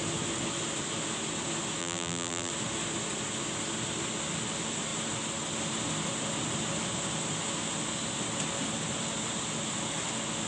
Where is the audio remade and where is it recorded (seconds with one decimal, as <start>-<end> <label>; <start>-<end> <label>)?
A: 0.0-1.8 recorded; 1.8-2.5 remade; 2.5-10.5 recorded

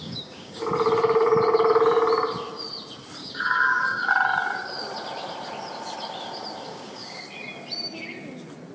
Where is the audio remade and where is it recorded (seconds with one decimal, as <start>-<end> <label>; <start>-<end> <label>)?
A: 0.0-0.6 remade; 0.6-3.2 recorded; 3.2-4.1 remade; 4.1-6.7 recorded; 6.7-7.2 remade; 7.2-8.7 recorded

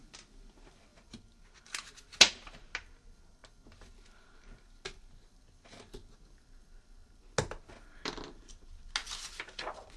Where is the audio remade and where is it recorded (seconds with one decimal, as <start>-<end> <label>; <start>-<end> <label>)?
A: 0.0-10.0 recorded

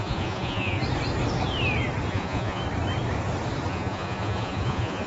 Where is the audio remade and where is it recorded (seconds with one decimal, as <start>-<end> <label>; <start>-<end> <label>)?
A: 0.0-0.8 remade; 0.8-2.1 recorded; 2.1-2.6 remade; 2.6-3.7 recorded; 3.7-5.1 remade

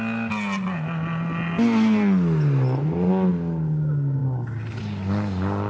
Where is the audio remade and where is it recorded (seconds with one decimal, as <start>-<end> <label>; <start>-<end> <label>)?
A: 0.0-5.7 recorded

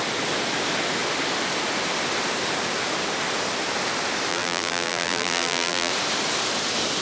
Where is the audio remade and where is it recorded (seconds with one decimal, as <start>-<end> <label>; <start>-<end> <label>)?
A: 0.0-4.3 recorded; 4.3-5.9 remade; 5.9-7.0 recorded

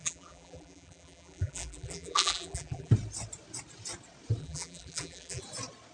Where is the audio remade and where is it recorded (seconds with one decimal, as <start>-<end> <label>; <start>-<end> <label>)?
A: 0.0-2.9 remade; 2.9-4.4 recorded; 4.4-5.4 remade; 5.4-5.9 recorded

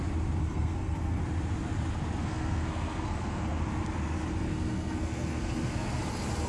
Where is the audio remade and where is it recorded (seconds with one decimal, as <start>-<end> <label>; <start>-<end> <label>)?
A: 0.0-0.4 recorded; 0.4-1.2 remade; 1.2-2.2 recorded; 2.2-3.6 remade; 3.6-4.5 recorded; 4.5-6.0 remade; 6.0-6.5 recorded